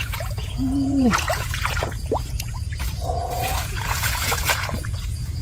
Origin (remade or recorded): remade